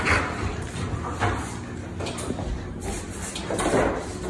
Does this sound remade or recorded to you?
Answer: recorded